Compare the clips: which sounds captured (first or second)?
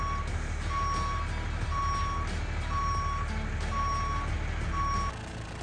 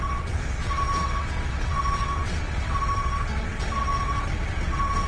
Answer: first